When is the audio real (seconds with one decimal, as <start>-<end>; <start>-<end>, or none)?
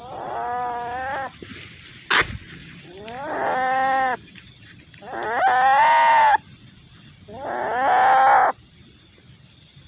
0.0-2.6; 6.7-9.9